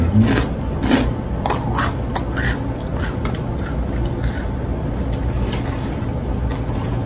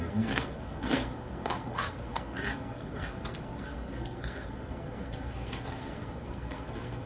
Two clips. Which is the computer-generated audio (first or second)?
second